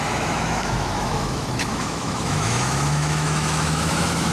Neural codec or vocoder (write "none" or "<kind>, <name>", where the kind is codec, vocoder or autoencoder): autoencoder, DAC-VAE